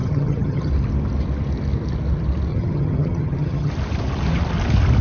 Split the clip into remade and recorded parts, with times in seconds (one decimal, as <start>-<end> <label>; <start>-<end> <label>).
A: 0.0-0.7 remade; 0.7-2.5 recorded; 2.5-3.7 remade; 3.7-5.0 recorded